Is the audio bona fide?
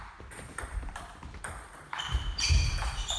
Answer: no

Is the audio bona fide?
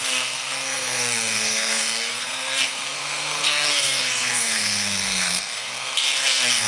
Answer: no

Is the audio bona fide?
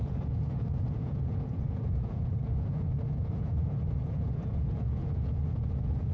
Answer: no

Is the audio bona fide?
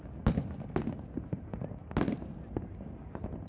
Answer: yes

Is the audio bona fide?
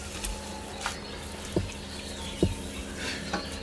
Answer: yes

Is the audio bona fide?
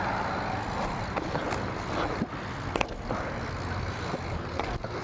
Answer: yes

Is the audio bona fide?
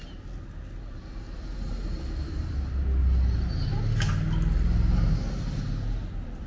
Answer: yes